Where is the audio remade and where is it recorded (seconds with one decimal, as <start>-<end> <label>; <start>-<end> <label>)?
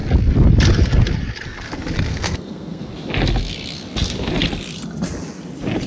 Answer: 0.0-2.1 recorded; 2.1-2.9 remade; 2.9-5.9 recorded